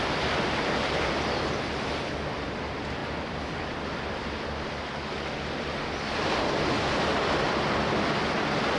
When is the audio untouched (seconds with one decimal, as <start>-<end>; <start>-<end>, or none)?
0.0-8.8